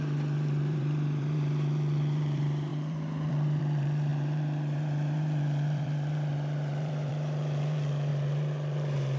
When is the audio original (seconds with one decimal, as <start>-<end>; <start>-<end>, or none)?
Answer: none